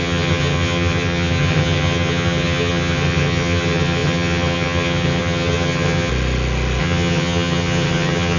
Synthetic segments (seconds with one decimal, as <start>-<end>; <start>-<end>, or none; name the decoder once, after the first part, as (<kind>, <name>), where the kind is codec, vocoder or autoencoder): 0.0-6.1 (vocoder, HiFi-GAN); 6.8-8.4